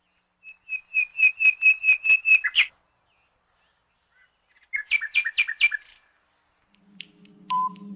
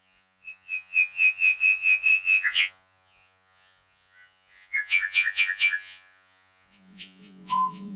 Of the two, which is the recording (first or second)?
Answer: first